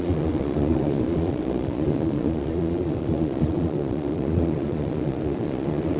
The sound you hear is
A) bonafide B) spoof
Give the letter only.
B